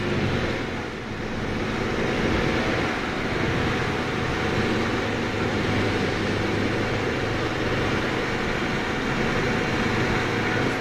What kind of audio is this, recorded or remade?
recorded